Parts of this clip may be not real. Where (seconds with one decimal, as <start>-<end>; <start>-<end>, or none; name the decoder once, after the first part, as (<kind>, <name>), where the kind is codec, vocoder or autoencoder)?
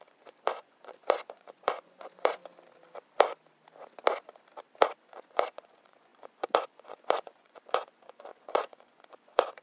0.0-2.4 (vocoder, Vocos); 5.0-9.6